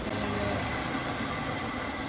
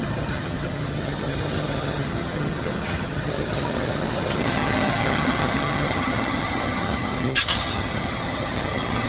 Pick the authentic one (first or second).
first